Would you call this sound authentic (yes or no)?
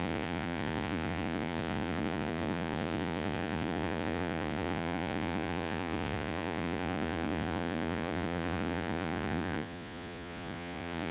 no